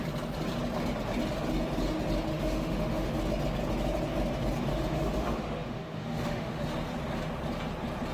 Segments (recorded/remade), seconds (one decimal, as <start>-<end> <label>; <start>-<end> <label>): 0.0-2.3 recorded; 2.3-3.1 remade; 3.1-4.7 recorded; 4.7-6.6 remade; 6.6-8.1 recorded